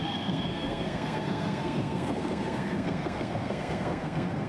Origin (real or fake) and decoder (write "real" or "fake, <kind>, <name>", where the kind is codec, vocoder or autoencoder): fake, codec, SNAC